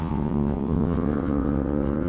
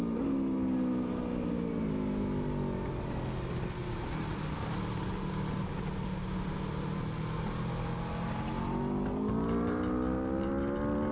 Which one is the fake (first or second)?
first